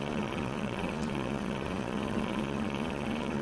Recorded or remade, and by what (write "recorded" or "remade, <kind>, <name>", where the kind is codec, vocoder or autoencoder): remade, vocoder, Vocos